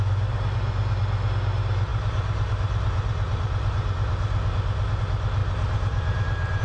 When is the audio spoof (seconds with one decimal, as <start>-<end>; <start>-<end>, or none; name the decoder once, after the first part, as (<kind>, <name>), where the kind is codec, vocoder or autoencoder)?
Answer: 1.9-5.0 (vocoder, BigVGAN v2); 5.4-6.6